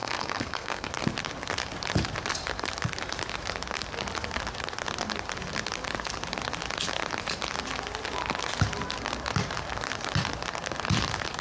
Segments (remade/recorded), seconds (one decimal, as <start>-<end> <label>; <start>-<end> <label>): 0.0-0.9 remade; 0.9-11.4 recorded